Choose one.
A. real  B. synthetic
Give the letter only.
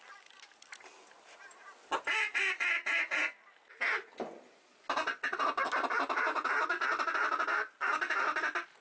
A